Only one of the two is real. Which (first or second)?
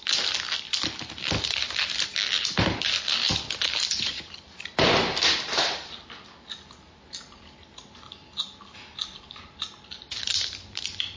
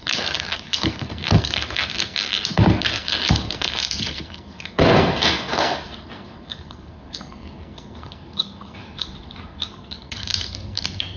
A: first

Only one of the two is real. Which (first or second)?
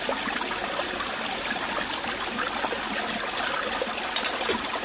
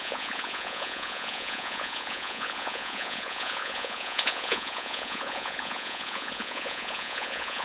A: first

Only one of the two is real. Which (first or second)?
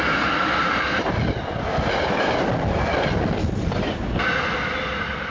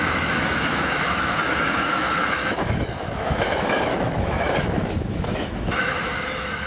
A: first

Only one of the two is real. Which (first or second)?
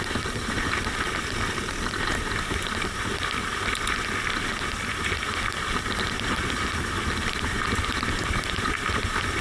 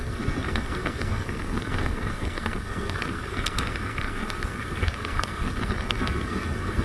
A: first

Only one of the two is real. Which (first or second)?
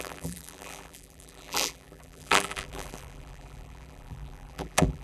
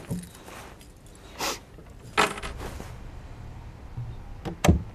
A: second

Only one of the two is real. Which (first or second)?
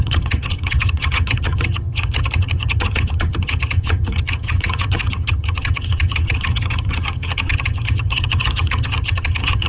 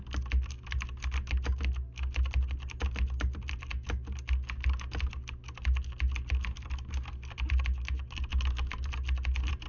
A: second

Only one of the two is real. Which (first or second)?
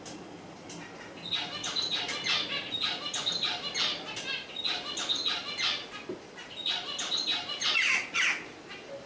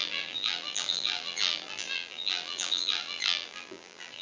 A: first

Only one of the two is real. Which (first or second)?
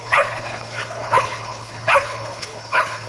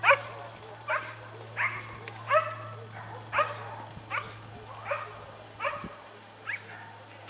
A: second